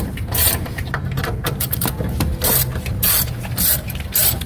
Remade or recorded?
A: remade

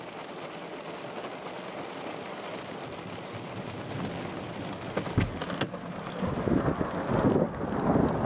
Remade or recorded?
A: recorded